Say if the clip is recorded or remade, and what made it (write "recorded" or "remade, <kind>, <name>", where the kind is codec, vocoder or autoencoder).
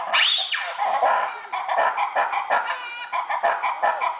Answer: recorded